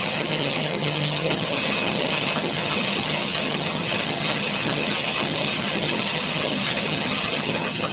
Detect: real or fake fake